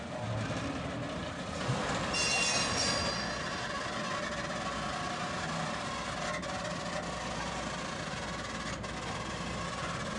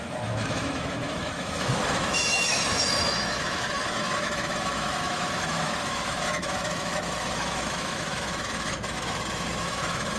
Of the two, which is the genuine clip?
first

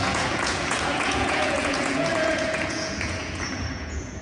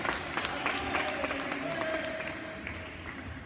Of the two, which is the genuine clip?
second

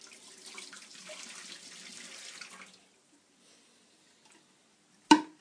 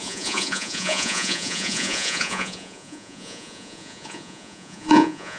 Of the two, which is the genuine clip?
first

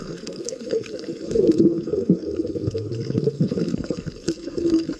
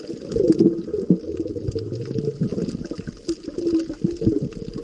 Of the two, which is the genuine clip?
second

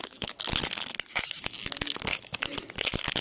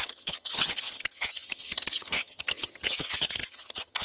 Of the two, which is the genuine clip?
first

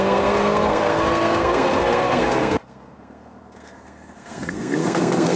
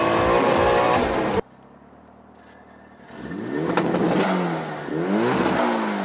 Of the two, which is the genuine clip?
second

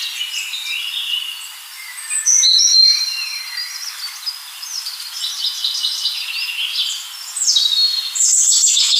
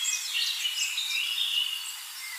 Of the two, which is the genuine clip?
first